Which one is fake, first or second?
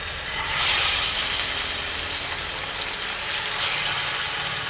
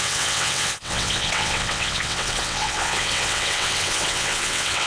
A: second